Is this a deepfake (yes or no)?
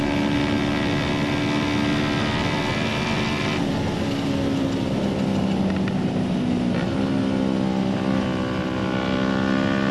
no